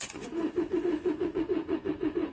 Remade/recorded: remade